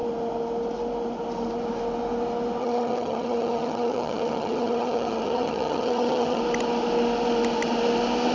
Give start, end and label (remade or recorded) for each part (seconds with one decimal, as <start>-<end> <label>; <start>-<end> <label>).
0.0-2.6 recorded; 2.6-6.4 remade; 6.4-8.3 recorded